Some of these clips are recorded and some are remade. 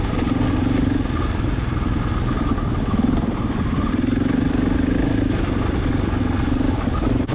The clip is recorded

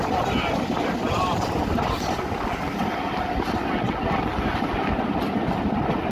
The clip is recorded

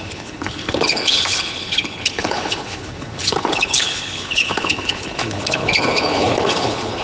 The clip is remade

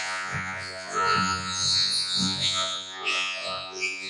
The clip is remade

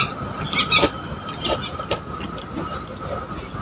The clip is recorded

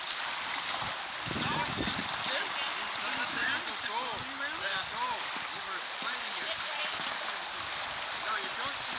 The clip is recorded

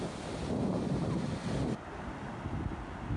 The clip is recorded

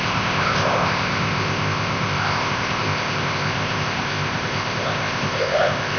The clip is remade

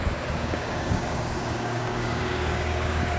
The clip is remade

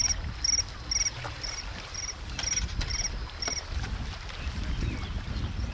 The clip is recorded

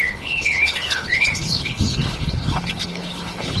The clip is remade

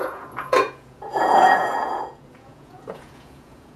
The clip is remade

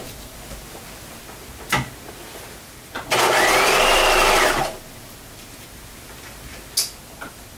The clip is recorded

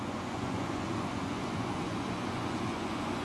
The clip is remade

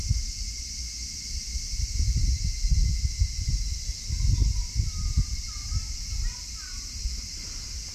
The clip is recorded